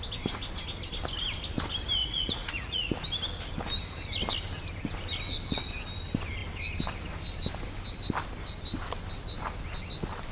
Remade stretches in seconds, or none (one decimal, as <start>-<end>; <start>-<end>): 2.0-2.9